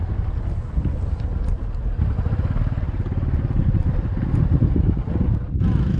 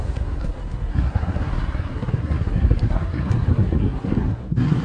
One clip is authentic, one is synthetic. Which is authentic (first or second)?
first